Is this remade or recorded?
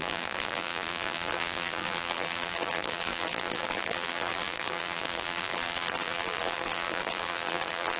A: remade